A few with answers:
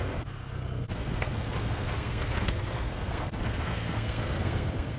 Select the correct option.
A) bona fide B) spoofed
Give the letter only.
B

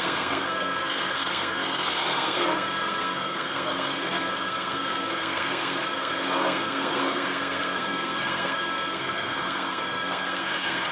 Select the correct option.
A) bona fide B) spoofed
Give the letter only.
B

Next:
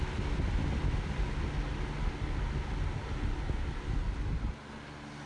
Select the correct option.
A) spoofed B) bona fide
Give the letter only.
B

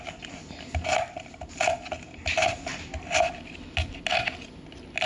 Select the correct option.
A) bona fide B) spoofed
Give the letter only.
A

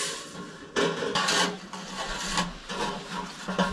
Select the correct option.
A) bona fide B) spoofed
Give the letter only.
A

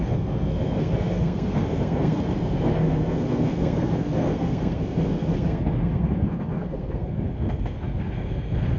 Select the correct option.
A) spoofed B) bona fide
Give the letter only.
A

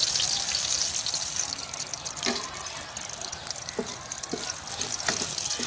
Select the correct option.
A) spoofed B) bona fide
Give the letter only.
B